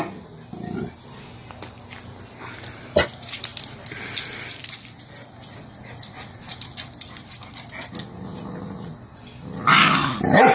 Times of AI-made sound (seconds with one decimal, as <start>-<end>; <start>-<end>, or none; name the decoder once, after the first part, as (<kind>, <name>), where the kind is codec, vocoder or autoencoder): none